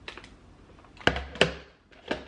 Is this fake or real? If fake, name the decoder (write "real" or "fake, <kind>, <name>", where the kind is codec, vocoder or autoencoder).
real